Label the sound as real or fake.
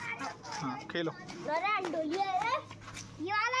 real